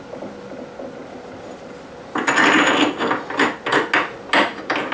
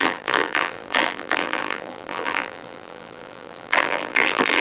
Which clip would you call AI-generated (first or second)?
second